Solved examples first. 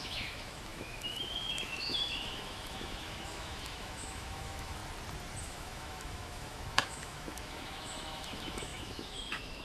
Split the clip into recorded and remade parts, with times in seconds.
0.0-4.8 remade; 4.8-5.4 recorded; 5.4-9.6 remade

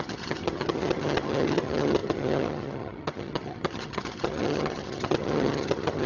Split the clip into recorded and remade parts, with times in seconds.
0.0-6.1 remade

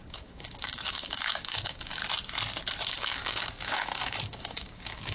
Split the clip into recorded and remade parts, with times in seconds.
0.0-2.0 remade; 2.0-2.8 recorded; 2.8-5.1 remade

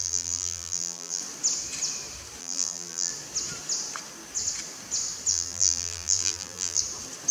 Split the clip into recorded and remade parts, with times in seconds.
0.0-1.2 remade; 1.2-2.4 recorded; 2.4-3.1 remade; 3.1-5.3 recorded; 5.3-6.8 remade; 6.8-7.3 recorded

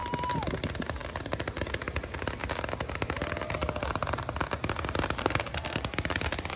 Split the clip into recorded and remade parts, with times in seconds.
0.0-5.2 recorded; 5.2-5.8 remade; 5.8-6.6 recorded

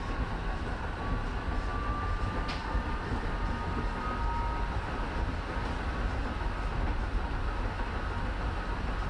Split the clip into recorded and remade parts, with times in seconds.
0.0-9.1 recorded